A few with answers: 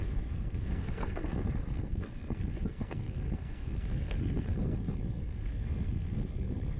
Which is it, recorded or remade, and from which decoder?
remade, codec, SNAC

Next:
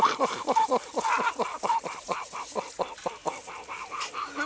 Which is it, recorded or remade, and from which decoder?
recorded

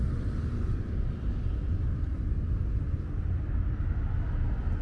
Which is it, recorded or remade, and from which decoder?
recorded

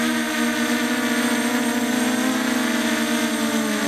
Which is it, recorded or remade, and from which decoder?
recorded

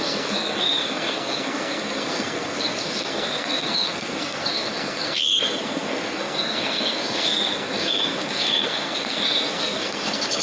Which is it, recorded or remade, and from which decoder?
remade, codec, SNAC